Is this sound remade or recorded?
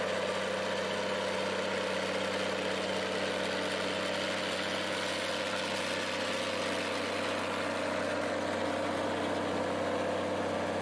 recorded